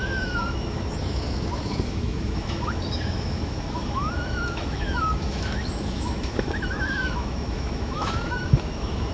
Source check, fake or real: fake